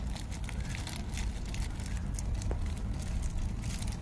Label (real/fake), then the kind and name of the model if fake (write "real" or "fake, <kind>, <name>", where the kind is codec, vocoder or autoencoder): real